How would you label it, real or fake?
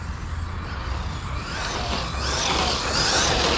real